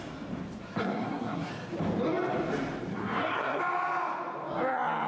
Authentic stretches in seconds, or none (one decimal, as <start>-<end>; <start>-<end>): 0.0-0.8; 1.5-2.9; 3.6-5.1